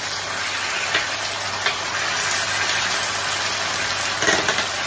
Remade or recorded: recorded